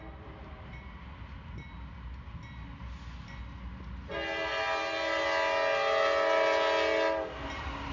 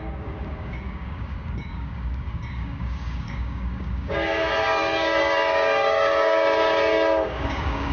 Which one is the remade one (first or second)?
second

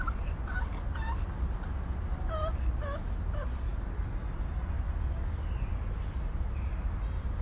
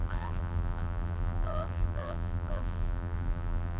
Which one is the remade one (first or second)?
second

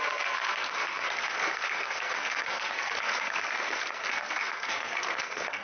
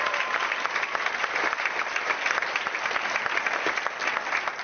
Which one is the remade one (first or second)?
first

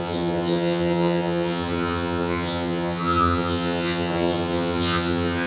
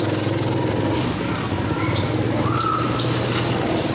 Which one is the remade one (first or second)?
first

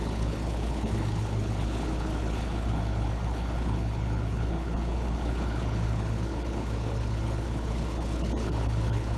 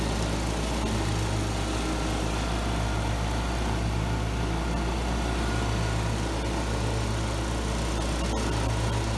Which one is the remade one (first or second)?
first